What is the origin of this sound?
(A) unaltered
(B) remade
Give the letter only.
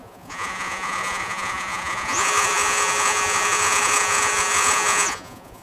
B